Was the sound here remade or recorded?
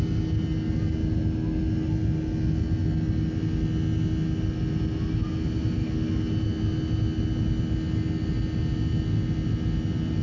recorded